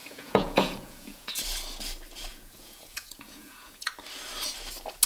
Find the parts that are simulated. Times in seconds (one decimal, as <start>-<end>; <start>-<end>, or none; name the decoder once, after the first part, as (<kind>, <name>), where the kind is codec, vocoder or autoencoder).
0.0-1.3 (vocoder, Vocos); 2.3-3.9